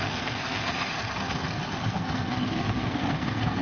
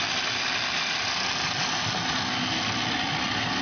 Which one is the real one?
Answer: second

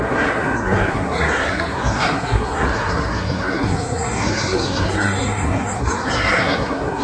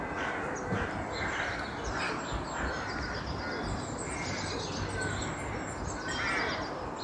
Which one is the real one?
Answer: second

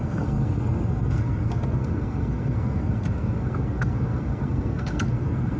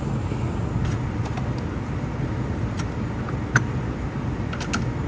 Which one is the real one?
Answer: second